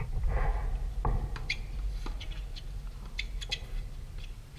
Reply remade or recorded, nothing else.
recorded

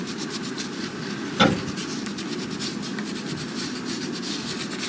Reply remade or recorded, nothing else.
recorded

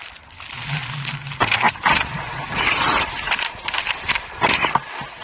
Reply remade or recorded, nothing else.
recorded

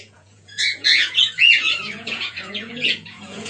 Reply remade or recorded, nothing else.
remade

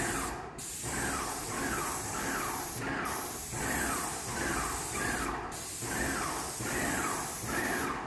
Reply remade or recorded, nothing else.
recorded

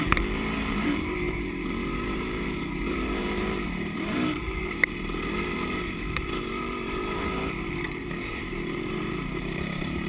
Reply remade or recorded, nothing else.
remade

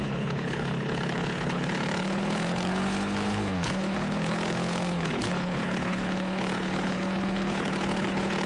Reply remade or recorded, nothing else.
remade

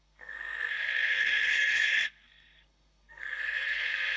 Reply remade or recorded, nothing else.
remade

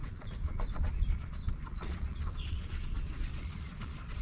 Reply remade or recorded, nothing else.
remade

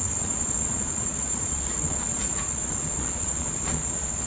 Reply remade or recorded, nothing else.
remade